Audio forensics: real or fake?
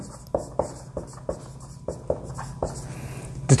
real